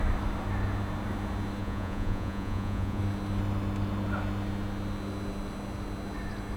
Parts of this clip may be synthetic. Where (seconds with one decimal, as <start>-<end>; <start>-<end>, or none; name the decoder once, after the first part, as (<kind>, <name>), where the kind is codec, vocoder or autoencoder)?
1.6-3.0 (vocoder, Vocos)